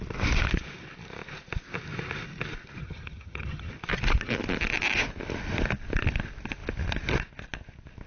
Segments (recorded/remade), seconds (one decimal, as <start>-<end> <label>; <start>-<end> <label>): 0.0-2.8 recorded; 2.8-3.7 remade; 3.7-8.1 recorded